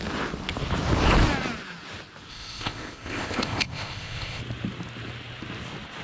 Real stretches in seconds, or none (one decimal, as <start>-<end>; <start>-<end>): 0.0-2.3; 4.4-6.0